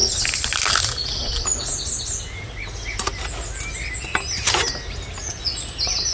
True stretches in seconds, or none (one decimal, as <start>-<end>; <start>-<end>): 0.0-6.1

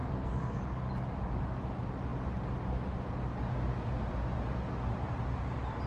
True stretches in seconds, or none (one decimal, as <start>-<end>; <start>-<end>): 0.6-5.9